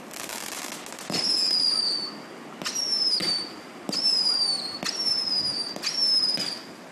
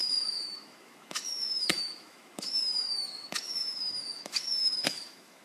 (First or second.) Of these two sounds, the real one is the first